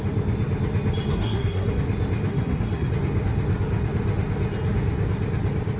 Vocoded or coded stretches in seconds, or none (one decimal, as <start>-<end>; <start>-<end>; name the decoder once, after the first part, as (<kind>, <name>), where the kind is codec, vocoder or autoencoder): 1.1-1.7 (codec, SNAC); 2.3-2.9